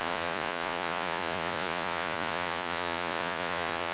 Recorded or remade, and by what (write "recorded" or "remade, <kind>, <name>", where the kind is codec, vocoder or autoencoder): remade, vocoder, Vocos